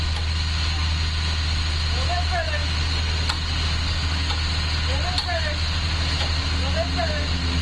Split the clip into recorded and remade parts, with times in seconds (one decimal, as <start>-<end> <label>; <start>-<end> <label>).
0.0-7.6 recorded